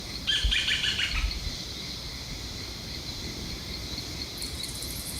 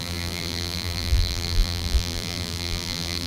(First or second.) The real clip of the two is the first